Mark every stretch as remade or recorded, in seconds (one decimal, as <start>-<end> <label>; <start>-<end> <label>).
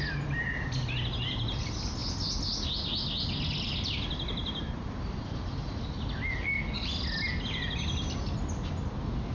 0.0-9.3 recorded